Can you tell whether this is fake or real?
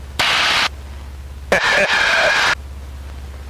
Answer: real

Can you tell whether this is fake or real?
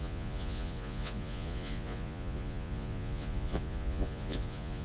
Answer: fake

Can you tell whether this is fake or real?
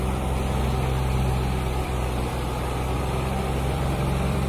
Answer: fake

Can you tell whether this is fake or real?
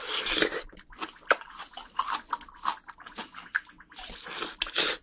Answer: real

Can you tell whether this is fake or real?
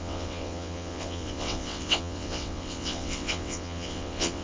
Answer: fake